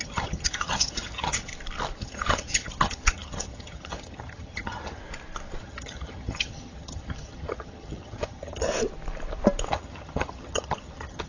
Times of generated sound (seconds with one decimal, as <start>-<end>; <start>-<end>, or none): 0.0-1.5; 2.0-5.0; 5.6-8.7; 9.7-11.3